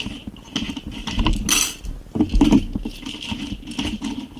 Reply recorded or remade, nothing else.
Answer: recorded